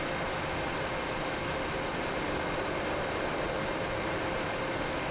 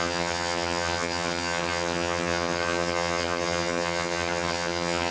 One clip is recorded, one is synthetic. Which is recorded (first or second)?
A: first